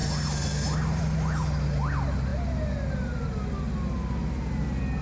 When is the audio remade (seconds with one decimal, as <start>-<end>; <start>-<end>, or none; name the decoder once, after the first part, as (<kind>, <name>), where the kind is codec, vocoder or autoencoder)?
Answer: none